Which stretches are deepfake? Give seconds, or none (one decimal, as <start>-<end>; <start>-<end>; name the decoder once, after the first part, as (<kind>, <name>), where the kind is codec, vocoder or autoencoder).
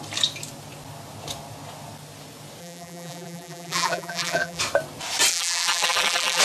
2.6-4.6 (vocoder, BigVGAN v2); 5.3-6.4